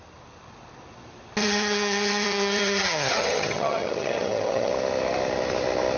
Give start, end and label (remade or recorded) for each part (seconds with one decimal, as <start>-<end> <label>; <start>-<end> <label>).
0.0-1.4 recorded; 1.4-4.7 remade; 4.7-6.0 recorded